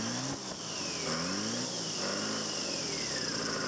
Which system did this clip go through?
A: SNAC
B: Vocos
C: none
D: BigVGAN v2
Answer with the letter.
C